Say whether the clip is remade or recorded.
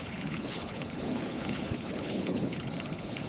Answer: remade